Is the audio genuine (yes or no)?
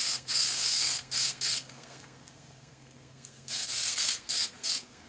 no